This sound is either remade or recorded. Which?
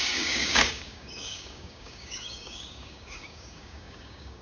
remade